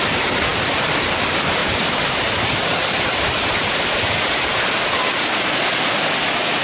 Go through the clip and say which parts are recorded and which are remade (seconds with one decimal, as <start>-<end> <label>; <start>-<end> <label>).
0.0-6.6 recorded

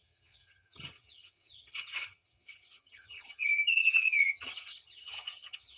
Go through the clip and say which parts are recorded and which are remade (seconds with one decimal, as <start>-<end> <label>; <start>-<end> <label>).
0.0-5.8 remade

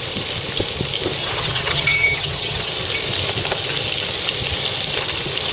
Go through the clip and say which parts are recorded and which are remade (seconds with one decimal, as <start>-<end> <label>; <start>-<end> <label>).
0.0-1.2 recorded; 1.2-2.7 remade; 2.7-5.5 recorded

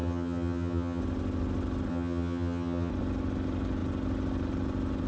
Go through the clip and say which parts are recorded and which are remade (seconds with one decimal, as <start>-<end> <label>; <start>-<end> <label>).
0.0-1.0 remade; 1.0-1.9 recorded; 1.9-2.9 remade; 2.9-5.1 recorded

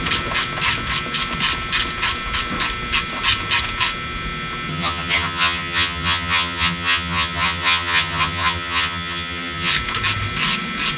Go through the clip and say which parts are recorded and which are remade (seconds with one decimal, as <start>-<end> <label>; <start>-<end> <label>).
0.0-4.7 recorded; 4.7-9.7 remade; 9.7-11.0 recorded

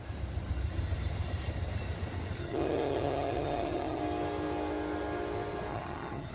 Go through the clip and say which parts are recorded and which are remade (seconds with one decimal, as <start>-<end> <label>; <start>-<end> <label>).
0.0-2.4 recorded; 2.4-4.0 remade; 4.0-5.7 recorded; 5.7-6.3 remade